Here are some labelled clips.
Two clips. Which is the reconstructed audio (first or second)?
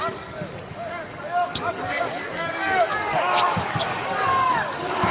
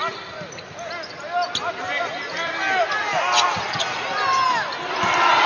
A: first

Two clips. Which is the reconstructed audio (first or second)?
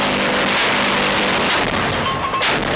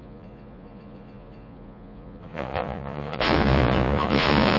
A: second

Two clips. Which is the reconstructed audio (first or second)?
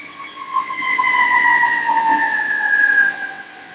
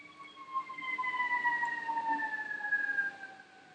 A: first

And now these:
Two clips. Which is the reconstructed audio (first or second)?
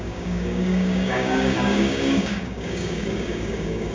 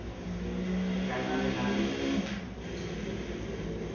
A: first